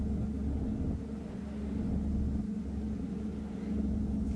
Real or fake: real